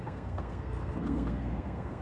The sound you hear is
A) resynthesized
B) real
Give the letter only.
A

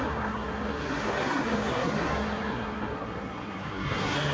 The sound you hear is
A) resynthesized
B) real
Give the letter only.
A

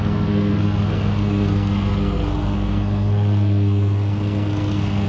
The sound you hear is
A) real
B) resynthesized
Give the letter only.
B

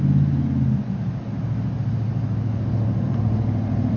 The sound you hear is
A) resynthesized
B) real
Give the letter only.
B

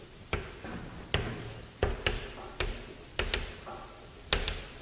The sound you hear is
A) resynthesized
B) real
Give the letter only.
B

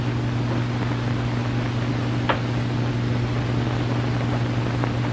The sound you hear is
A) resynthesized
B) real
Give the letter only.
B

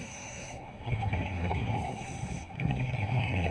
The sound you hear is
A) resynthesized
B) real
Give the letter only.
A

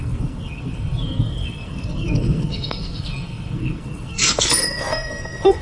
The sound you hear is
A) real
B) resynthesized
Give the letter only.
B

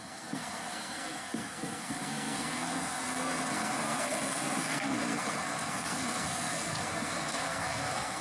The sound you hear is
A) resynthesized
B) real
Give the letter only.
A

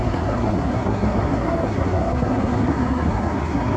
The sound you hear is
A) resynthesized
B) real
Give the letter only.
A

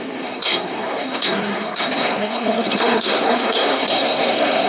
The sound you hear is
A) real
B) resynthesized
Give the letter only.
B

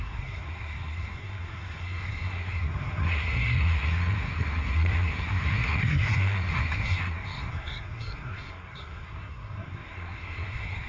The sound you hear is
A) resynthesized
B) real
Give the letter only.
A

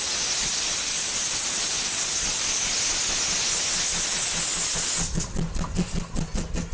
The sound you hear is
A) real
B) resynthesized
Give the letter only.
A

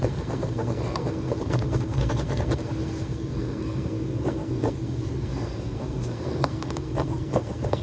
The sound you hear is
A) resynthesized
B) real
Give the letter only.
A